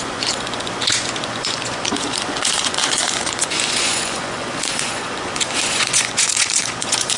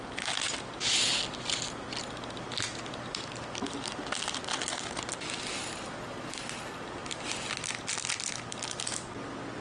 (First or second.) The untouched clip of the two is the second